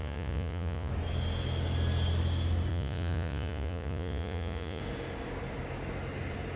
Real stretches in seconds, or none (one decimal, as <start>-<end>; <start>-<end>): 0.9-2.7; 4.8-6.6